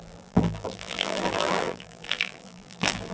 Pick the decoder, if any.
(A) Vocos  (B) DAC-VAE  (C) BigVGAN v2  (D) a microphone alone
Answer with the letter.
C